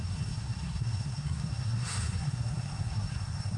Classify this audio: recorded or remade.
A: remade